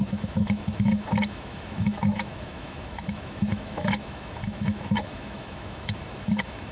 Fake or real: fake